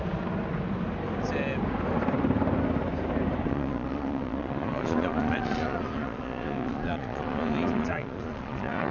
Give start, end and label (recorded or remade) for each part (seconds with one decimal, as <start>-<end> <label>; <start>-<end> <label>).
0.0-3.4 recorded; 3.4-8.9 remade